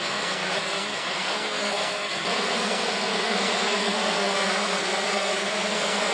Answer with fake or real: fake